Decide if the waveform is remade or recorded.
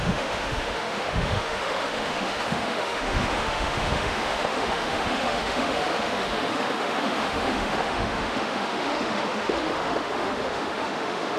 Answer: remade